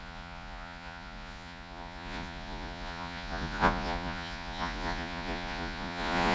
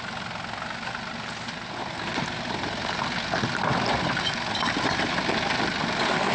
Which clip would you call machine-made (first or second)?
first